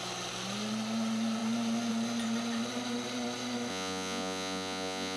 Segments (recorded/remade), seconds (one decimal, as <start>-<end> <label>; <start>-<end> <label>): 0.0-3.7 recorded; 3.7-5.2 remade